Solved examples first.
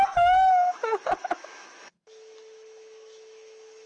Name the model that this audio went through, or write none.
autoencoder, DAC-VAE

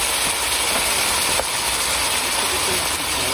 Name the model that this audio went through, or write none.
none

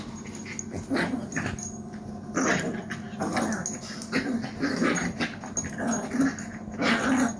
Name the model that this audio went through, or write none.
none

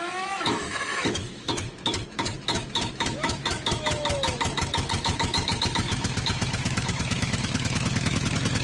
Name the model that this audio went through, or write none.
autoencoder, DAC-VAE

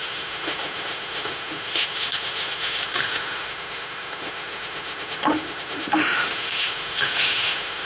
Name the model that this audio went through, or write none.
autoencoder, DAC-VAE